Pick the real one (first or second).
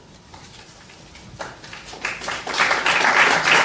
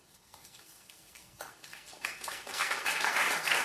first